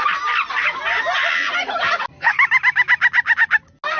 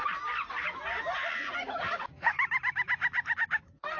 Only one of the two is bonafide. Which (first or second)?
first